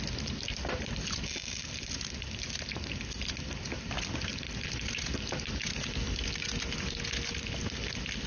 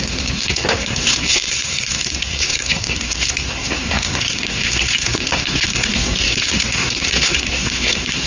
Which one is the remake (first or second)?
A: second